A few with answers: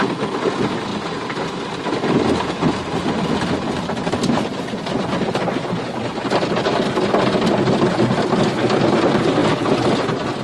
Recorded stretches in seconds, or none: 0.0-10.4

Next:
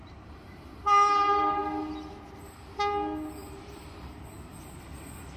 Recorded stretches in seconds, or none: 1.6-4.8

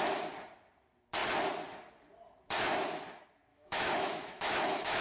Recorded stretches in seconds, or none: 0.0-3.5

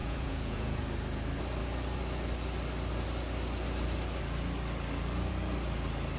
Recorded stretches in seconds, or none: 0.8-6.2

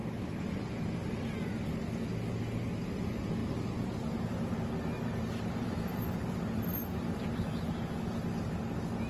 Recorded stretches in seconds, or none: 0.0-5.9; 6.7-9.1